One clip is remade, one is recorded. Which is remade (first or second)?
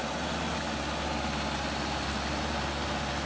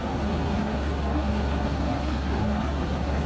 second